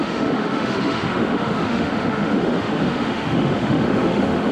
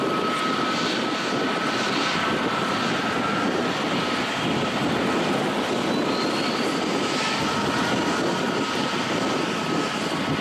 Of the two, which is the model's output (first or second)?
first